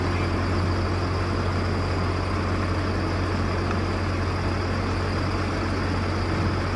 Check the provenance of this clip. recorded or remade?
recorded